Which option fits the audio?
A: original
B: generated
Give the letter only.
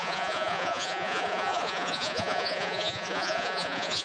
B